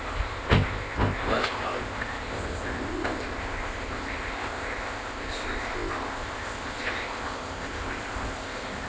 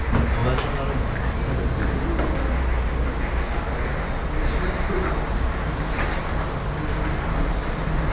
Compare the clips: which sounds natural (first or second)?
second